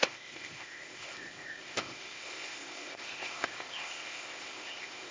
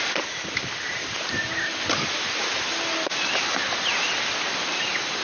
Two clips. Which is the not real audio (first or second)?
first